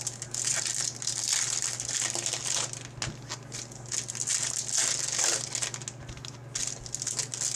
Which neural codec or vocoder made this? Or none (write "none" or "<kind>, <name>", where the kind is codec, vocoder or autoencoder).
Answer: none